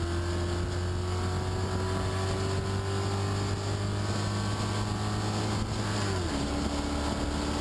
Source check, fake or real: real